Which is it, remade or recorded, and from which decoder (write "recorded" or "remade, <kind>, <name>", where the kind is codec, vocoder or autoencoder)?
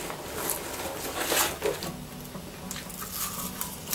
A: recorded